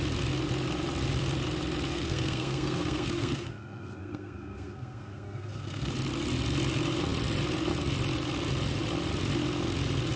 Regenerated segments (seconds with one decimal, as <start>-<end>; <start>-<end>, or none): 1.9-5.9